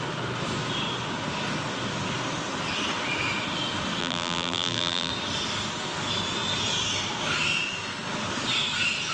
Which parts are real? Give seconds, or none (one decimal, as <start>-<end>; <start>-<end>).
0.0-4.0; 5.1-9.1